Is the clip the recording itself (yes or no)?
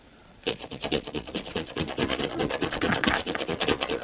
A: no